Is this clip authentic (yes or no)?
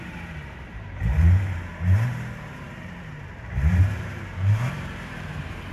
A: no